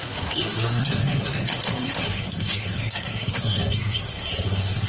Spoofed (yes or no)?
yes